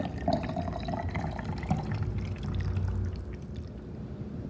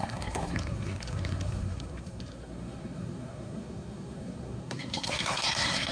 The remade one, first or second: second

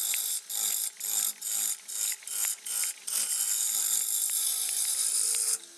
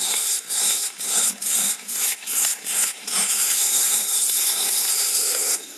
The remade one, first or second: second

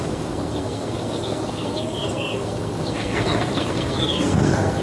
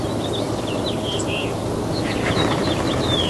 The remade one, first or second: first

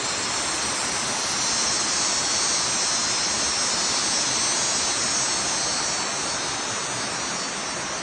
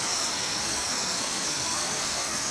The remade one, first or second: second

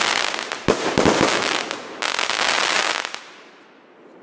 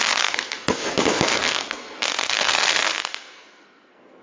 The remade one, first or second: second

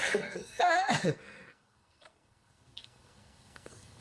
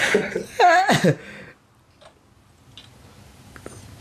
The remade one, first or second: first